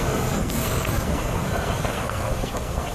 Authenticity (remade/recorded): remade